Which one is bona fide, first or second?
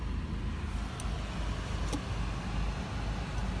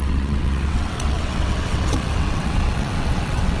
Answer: first